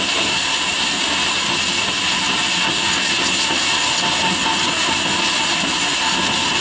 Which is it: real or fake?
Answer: real